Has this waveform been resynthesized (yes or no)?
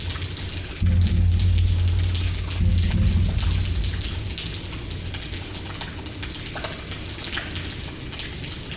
no